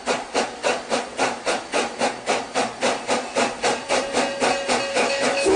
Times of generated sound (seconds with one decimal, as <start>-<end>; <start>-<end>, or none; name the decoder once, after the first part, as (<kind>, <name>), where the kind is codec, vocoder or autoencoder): 4.9-5.6 (autoencoder, DAC-VAE)